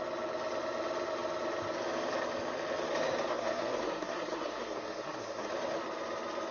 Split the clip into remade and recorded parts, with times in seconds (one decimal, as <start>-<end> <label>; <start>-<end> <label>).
0.0-3.3 recorded; 3.3-5.5 remade; 5.5-6.5 recorded